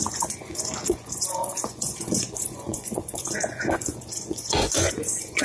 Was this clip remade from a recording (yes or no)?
yes